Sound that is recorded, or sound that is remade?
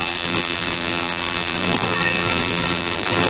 remade